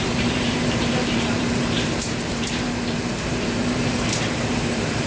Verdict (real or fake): fake